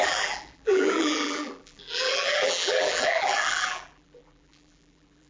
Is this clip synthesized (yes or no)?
yes